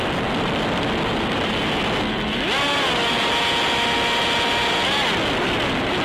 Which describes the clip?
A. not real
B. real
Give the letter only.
B